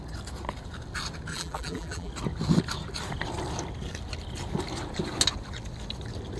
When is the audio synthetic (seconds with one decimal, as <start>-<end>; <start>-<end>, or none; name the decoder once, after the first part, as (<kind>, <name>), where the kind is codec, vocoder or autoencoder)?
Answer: 1.3-2.1 (vocoder, BigVGAN v2)